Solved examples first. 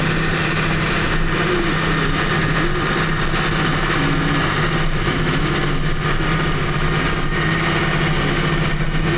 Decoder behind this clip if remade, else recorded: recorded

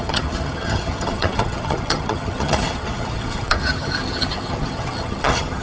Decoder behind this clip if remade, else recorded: remade, vocoder, HiFi-GAN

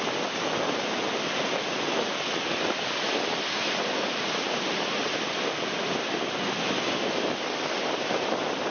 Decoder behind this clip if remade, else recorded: recorded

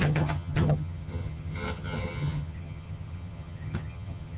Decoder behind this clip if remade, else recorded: remade, vocoder, HiFi-GAN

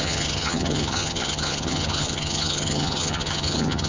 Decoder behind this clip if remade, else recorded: remade, vocoder, HiFi-GAN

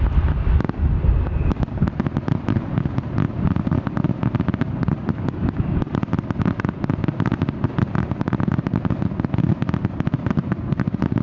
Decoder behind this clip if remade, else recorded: recorded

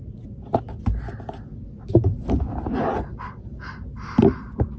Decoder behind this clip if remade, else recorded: recorded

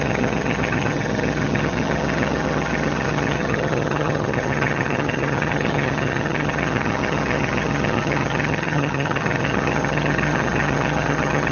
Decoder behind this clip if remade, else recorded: remade, vocoder, HiFi-GAN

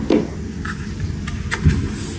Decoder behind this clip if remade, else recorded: recorded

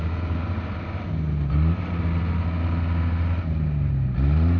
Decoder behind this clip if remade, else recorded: recorded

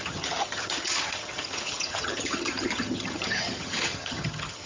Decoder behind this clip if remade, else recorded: remade, vocoder, HiFi-GAN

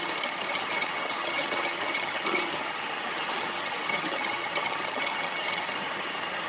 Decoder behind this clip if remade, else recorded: remade, vocoder, HiFi-GAN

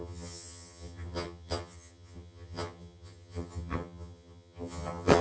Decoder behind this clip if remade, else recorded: remade, vocoder, HiFi-GAN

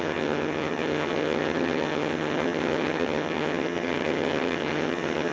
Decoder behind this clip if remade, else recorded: remade, vocoder, HiFi-GAN